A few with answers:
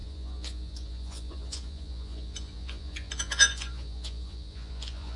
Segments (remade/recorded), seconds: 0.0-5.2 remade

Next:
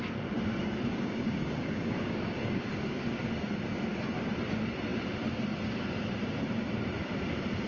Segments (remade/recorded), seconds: 0.0-0.6 recorded; 0.6-3.3 remade; 3.3-7.7 recorded

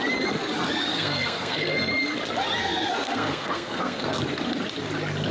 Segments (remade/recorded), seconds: 0.0-0.9 recorded; 0.9-1.9 remade; 1.9-2.6 recorded; 2.6-4.2 remade; 4.2-5.3 recorded

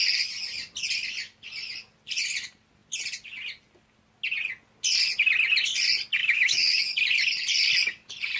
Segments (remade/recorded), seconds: 0.0-6.2 recorded; 6.2-7.0 remade; 7.0-8.4 recorded